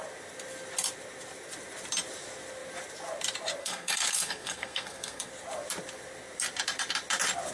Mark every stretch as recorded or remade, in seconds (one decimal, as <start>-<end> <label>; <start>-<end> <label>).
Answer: 0.0-3.6 recorded; 3.6-5.3 remade; 5.3-7.5 recorded